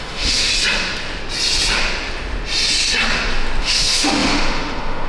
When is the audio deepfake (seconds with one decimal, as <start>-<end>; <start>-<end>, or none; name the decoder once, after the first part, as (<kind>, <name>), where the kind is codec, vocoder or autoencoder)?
0.0-0.5 (autoencoder, DAC-VAE); 3.6-5.1